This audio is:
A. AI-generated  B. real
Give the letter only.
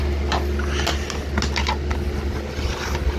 B